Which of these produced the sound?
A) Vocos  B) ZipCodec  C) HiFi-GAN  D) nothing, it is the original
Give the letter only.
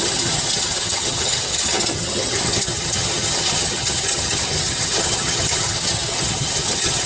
C